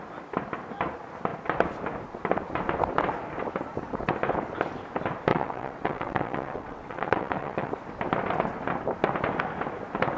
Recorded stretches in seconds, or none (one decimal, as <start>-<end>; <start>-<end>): 0.0-5.3; 7.7-10.2